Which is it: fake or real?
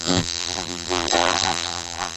fake